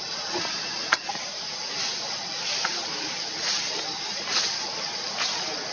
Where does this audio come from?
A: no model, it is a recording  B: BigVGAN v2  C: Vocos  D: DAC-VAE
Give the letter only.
A